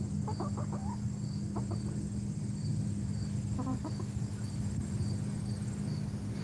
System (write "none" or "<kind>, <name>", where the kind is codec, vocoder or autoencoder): none